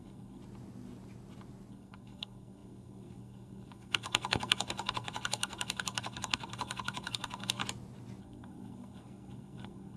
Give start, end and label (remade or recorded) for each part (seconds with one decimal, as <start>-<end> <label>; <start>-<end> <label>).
0.0-0.4 remade; 0.4-1.7 recorded; 1.7-7.6 remade; 7.6-8.2 recorded; 8.2-10.0 remade